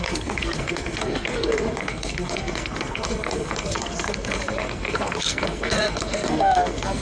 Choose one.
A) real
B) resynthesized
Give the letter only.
B